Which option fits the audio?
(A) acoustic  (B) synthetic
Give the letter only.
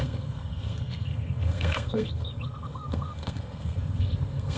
B